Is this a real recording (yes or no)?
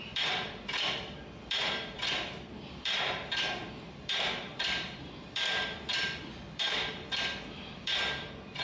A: no